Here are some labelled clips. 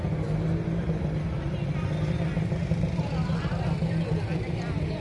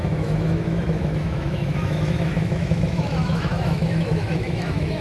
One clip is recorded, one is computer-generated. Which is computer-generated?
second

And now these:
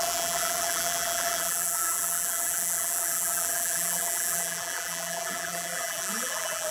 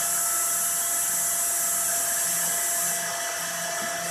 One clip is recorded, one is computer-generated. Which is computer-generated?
first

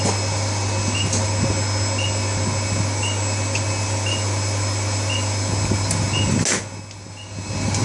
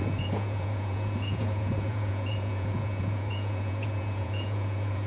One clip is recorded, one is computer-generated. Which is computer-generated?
second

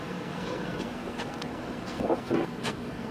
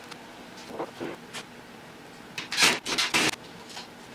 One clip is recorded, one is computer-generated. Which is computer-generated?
first